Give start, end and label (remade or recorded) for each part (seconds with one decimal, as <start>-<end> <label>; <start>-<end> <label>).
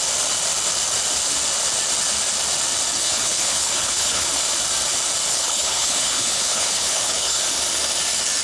0.0-3.0 recorded; 3.0-4.3 remade; 4.3-5.3 recorded; 5.3-7.4 remade; 7.4-8.4 recorded